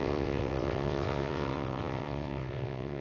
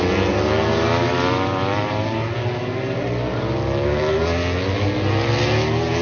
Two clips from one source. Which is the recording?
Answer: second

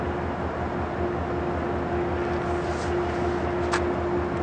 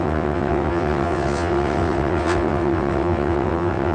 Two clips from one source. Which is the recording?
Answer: first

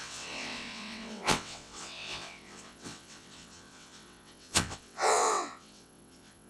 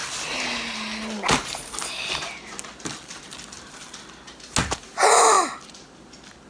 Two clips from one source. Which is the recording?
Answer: second